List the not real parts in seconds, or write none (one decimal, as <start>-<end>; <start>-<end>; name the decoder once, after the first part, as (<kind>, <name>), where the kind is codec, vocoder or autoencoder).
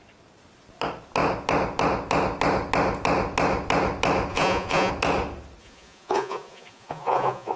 4.3-4.9 (vocoder, Vocos); 5.6-7.6